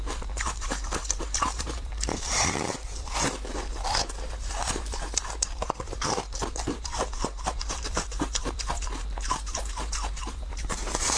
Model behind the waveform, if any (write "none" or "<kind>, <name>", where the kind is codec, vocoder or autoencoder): vocoder, BigVGAN v2